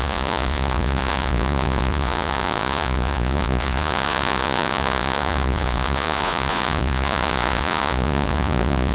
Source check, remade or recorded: remade